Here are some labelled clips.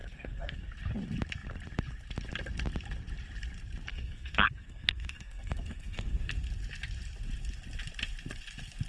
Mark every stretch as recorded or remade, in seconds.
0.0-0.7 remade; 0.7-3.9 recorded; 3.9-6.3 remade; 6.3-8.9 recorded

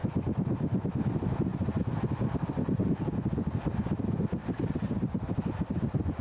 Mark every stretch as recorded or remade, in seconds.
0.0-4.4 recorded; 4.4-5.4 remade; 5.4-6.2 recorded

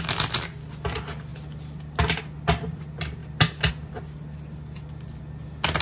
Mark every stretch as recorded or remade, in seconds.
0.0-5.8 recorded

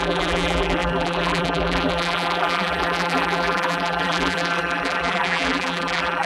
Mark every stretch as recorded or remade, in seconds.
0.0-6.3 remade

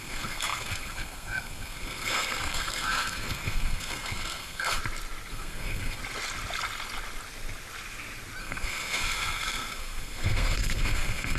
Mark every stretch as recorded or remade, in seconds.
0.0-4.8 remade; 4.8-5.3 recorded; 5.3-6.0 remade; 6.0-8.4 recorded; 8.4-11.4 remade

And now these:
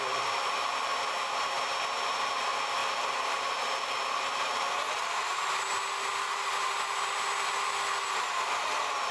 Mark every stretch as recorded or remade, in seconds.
0.0-9.1 recorded

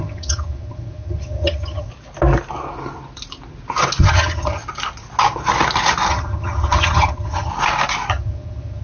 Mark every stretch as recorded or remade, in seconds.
0.0-1.9 remade; 1.9-4.0 recorded; 4.0-4.6 remade; 4.6-6.1 recorded; 6.1-7.5 remade; 7.5-8.1 recorded; 8.1-8.8 remade